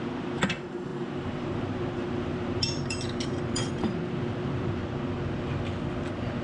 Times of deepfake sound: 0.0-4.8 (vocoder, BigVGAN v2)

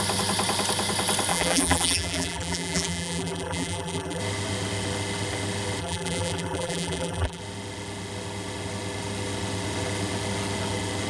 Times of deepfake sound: 1.3-4.2 (vocoder, BigVGAN v2); 5.8-7.4

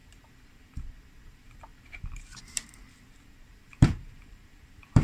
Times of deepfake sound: 0.0-5.0 (vocoder, BigVGAN v2)

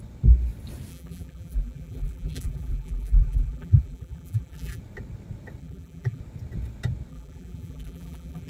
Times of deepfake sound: 0.9-4.8 (vocoder, BigVGAN v2); 5.6-6.2; 7.1-8.5

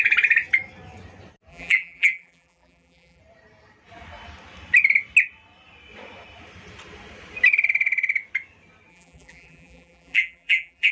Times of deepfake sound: 1.5-3.2 (vocoder, BigVGAN v2); 8.9-10.9